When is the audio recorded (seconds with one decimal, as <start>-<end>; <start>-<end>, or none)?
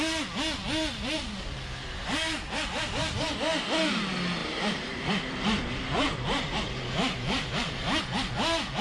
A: 0.0-4.4; 8.0-8.8